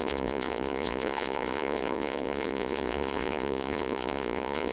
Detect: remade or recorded remade